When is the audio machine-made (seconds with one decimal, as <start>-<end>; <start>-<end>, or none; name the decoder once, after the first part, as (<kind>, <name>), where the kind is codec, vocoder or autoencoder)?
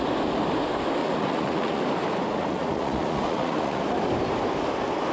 1.0-1.8 (vocoder, Vocos); 2.3-3.8